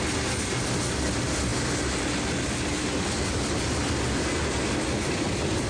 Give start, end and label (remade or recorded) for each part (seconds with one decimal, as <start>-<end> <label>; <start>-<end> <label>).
0.0-5.7 recorded